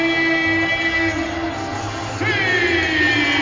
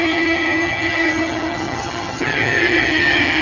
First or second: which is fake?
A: second